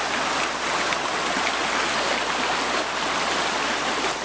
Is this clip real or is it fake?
real